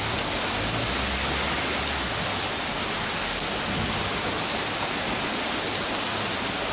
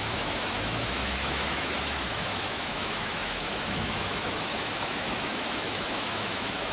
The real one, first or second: first